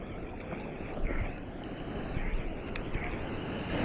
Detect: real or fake real